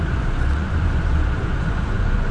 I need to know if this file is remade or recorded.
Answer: remade